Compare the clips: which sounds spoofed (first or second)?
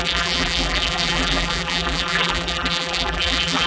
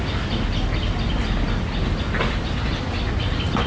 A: first